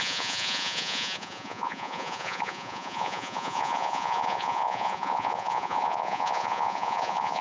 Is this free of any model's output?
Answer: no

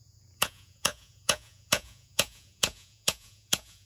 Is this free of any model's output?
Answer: no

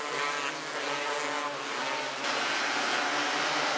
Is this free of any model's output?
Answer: yes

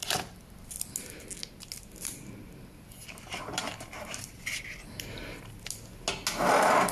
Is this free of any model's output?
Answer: yes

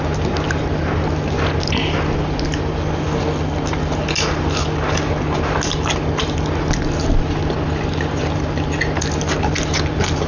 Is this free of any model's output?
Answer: yes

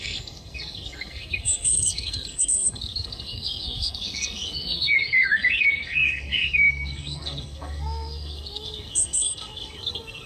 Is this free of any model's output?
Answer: no